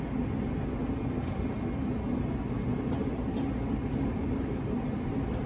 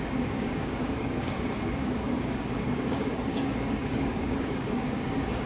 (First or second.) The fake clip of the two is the second